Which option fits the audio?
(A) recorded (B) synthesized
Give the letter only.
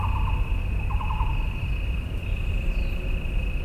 A